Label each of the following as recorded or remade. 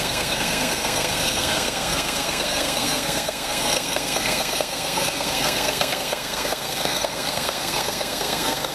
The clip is remade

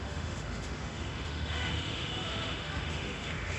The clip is remade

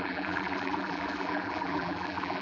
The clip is remade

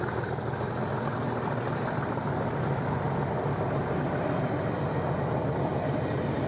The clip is recorded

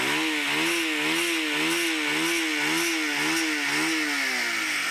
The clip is recorded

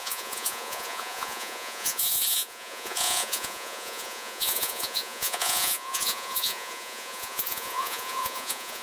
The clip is remade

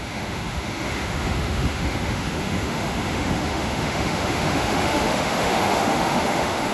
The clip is remade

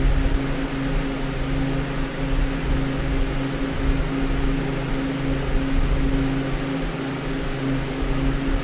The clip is recorded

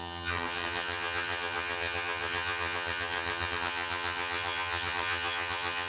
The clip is remade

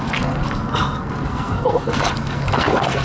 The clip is remade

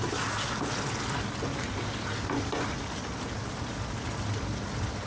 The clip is recorded